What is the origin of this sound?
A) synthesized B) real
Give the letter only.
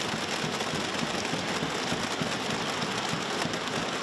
B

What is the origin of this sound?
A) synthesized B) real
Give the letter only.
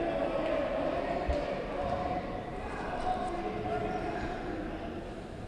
B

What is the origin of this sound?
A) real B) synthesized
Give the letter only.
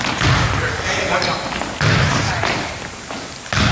A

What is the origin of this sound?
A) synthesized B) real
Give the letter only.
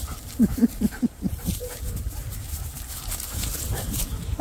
A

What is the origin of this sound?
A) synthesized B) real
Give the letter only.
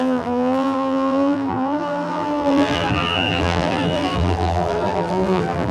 A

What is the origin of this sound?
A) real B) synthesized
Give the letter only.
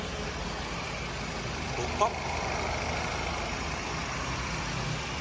A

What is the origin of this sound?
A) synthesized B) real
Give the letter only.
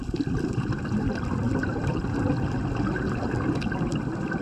A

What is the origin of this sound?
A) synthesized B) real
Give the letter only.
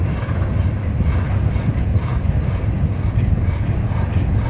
B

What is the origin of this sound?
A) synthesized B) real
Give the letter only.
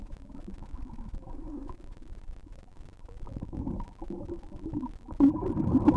A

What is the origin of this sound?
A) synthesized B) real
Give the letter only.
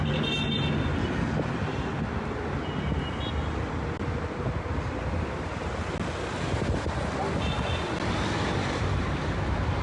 B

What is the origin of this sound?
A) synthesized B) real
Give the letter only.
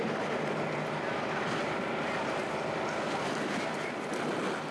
B